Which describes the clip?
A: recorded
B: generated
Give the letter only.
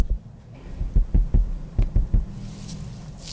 A